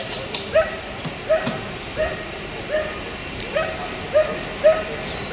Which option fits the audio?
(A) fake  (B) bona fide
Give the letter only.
B